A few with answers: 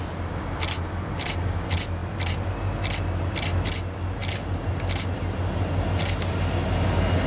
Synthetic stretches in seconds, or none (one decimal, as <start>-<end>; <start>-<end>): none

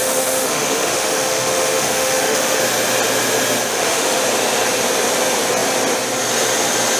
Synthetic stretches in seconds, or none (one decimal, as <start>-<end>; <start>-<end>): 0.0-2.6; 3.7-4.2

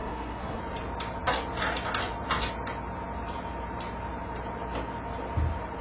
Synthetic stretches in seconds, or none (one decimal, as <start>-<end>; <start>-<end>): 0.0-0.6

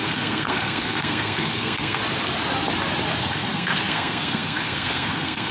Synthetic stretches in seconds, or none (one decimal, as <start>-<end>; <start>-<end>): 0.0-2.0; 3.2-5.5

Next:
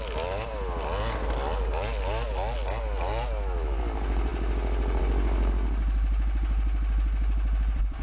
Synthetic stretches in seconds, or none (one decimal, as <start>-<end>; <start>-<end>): none

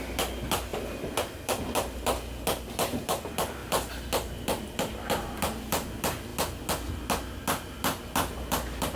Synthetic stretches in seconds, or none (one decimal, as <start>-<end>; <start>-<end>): none

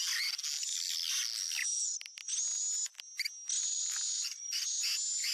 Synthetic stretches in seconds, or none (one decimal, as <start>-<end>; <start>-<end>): 3.6-4.8